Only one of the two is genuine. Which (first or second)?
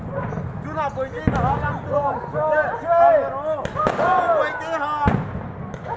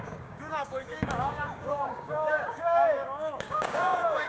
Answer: first